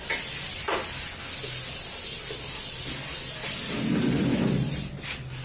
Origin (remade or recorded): recorded